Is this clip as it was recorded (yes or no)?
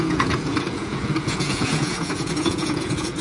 no